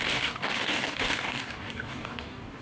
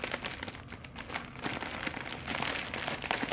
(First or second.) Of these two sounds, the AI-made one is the first